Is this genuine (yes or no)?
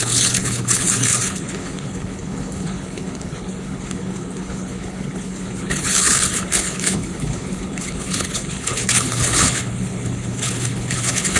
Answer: no